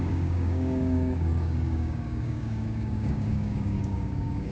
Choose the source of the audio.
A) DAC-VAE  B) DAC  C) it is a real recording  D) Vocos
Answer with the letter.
B